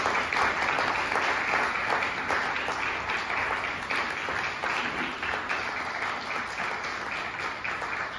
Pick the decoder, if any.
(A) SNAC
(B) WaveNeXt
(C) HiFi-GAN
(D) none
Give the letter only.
D